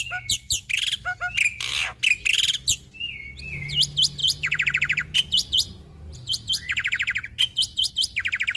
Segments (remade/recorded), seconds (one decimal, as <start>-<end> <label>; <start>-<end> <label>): 0.0-4.2 recorded; 4.2-7.9 remade; 7.9-8.6 recorded